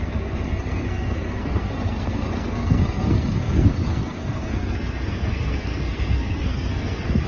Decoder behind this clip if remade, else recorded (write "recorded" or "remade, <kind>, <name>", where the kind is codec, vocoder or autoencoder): remade, codec, SNAC